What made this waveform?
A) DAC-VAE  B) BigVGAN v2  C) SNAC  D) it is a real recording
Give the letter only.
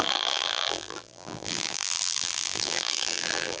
B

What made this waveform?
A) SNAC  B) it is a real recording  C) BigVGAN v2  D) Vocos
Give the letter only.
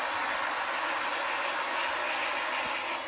B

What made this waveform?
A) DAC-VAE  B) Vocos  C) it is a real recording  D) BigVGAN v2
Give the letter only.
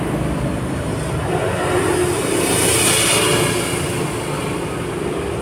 C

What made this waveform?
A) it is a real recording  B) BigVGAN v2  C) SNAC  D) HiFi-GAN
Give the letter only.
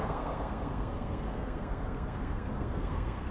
C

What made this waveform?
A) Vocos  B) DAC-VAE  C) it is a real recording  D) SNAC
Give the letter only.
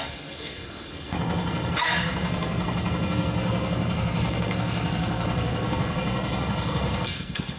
D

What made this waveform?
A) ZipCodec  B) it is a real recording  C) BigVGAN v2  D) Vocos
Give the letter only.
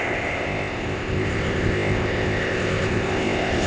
A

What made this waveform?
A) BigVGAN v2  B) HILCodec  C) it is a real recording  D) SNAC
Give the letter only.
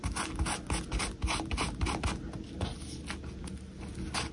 C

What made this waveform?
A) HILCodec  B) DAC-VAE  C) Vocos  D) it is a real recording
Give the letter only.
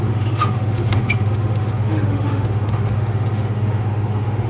B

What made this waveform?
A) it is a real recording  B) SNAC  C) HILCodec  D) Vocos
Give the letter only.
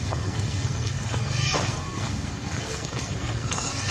B